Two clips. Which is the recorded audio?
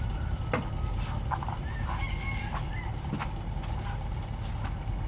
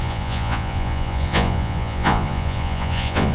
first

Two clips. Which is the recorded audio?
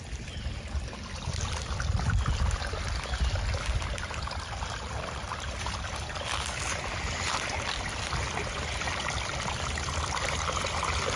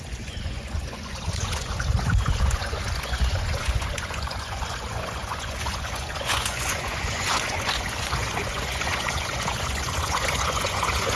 first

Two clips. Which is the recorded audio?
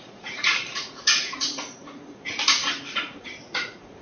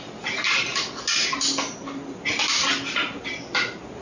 second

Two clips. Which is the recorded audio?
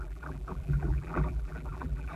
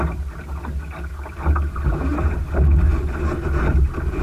second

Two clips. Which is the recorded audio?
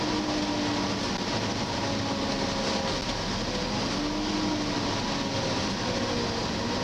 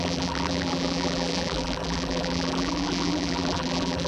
first